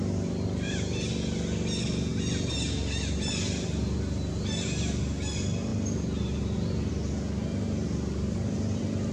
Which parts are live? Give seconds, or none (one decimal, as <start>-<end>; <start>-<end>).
0.0-9.1